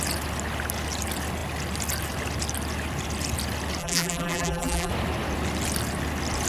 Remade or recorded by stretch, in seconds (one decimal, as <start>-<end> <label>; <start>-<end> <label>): 0.0-3.8 recorded; 3.8-4.9 remade; 4.9-6.5 recorded